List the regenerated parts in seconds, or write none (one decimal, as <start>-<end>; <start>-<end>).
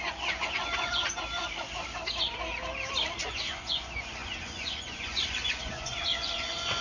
0.0-1.0; 3.3-6.8